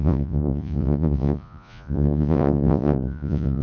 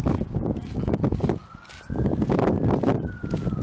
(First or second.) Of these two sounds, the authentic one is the second